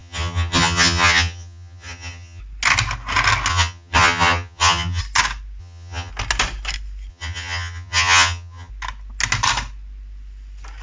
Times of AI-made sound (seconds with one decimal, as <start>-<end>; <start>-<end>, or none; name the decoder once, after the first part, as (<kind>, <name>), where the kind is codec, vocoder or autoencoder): 0.0-2.4 (vocoder, HiFi-GAN); 3.5-5.0; 5.6-6.1; 7.1-8.7